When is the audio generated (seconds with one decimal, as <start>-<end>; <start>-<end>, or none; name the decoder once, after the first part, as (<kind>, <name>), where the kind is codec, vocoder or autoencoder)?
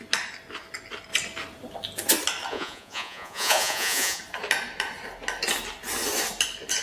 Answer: 2.5-4.2 (vocoder, Vocos)